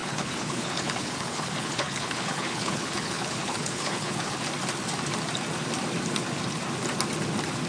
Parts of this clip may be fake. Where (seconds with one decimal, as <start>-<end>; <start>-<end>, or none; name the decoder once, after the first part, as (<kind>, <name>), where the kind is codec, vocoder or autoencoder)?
0.0-4.4 (codec, HILCodec)